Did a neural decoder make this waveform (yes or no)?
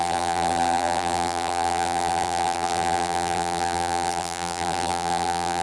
yes